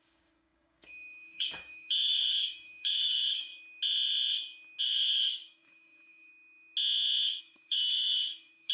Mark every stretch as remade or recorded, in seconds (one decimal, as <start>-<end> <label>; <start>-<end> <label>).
0.0-3.5 remade; 3.5-4.8 recorded; 4.8-6.3 remade; 6.3-7.4 recorded; 7.4-8.7 remade